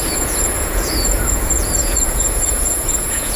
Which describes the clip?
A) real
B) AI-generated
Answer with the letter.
B